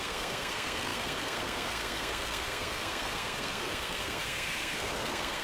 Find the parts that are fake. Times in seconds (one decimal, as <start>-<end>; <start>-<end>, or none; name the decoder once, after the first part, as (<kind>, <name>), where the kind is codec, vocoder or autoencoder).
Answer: 0.0-5.4 (codec, SNAC)